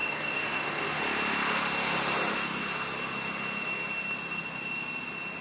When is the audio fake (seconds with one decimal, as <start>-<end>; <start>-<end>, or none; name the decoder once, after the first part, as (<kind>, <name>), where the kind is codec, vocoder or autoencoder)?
0.0-1.0 (autoencoder, DAC-VAE)

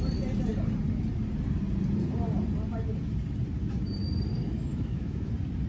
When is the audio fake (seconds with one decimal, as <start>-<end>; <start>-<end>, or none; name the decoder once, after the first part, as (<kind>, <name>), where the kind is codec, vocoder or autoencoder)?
4.7-5.3 (autoencoder, DAC-VAE)

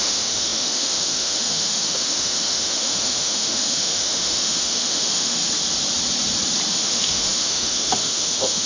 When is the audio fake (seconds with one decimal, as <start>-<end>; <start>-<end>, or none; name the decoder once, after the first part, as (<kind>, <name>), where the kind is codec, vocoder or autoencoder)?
0.0-5.4 (autoencoder, DAC-VAE); 6.7-8.7

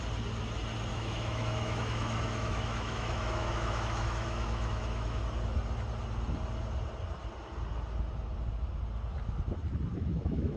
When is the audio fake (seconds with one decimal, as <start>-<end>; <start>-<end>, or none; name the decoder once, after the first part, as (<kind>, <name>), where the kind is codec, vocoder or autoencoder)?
0.9-5.2 (autoencoder, DAC-VAE); 9.9-10.6

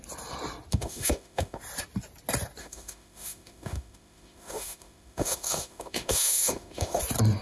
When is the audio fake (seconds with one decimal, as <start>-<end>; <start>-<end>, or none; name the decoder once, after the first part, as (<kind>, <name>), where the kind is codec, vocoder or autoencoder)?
0.7-1.6 (autoencoder, DAC-VAE); 2.6-7.0